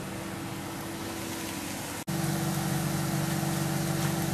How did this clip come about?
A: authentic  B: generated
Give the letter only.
A